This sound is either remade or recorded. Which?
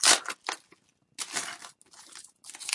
recorded